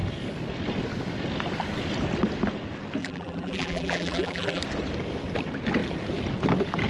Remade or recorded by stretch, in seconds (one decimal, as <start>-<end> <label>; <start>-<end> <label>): 0.0-3.0 recorded; 3.0-4.6 remade; 4.6-6.9 recorded